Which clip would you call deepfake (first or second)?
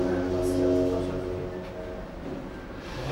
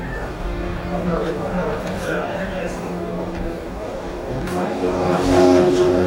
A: second